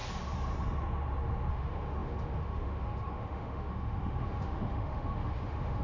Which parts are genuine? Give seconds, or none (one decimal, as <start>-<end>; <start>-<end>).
0.0-1.5